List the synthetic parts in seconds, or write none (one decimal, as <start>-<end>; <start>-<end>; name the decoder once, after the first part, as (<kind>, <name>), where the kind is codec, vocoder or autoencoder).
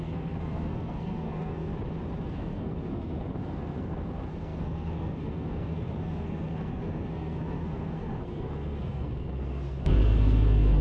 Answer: 0.0-1.7 (codec, SNAC); 2.2-10.8